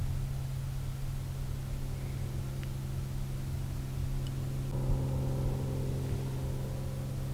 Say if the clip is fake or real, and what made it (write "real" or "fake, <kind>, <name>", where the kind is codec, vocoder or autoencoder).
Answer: real